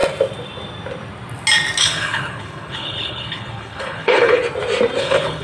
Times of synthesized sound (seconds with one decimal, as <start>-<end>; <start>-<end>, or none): 1.8-4.4; 5.0-5.4